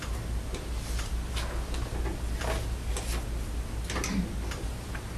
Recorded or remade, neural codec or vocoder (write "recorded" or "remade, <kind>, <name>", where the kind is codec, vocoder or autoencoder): recorded